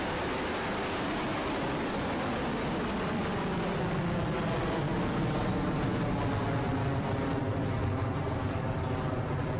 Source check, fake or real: fake